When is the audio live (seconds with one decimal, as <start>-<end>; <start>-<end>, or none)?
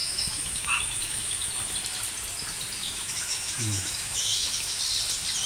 1.5-2.8; 4.8-5.5